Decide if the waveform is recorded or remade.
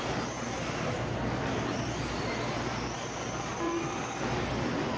recorded